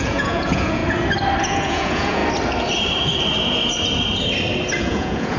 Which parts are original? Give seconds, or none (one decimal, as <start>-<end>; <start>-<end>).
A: 0.8-1.4; 2.2-4.8